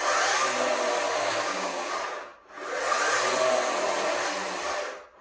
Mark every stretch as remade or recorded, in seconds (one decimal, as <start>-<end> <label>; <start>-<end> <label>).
0.0-1.2 recorded; 1.2-1.9 remade; 1.9-5.2 recorded